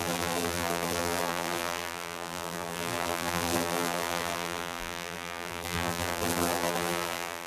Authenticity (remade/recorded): remade